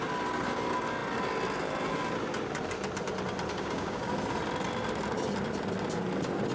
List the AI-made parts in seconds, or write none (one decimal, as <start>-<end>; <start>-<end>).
3.5-4.1